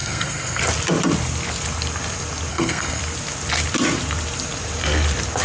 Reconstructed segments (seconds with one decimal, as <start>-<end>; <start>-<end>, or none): 0.0-0.6; 2.5-3.0